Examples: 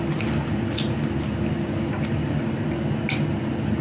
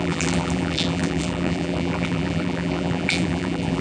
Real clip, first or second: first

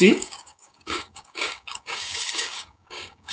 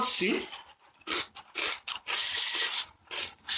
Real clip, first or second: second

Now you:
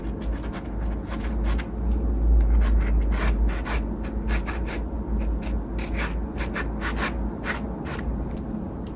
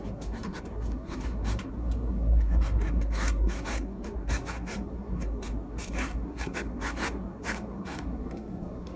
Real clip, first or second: first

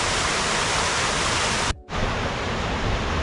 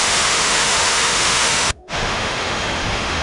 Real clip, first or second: first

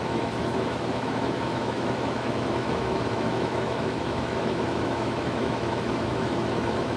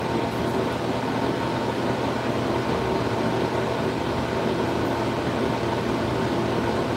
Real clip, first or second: second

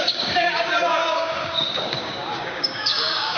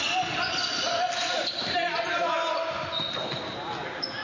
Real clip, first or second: second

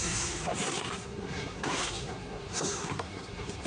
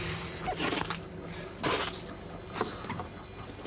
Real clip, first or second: second